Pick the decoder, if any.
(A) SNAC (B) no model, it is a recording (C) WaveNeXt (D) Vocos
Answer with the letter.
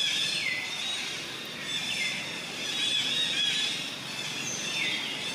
B